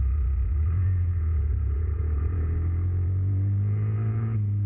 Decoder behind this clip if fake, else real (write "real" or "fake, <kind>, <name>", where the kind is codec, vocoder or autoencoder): fake, vocoder, Vocos